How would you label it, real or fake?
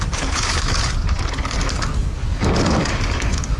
fake